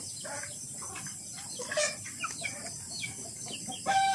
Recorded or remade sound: recorded